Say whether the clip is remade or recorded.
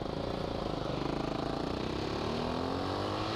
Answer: recorded